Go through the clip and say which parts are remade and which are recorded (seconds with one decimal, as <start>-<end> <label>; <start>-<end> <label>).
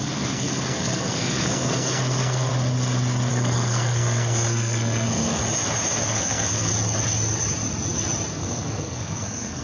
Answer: 0.0-2.5 remade; 2.5-3.3 recorded; 3.3-5.4 remade; 5.4-6.0 recorded; 6.0-6.7 remade; 6.7-8.3 recorded; 8.3-9.6 remade